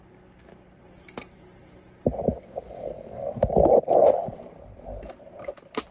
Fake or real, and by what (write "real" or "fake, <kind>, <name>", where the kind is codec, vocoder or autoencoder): real